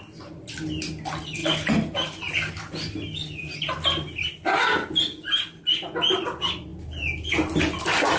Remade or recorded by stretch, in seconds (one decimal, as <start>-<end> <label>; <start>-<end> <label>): 0.0-8.2 recorded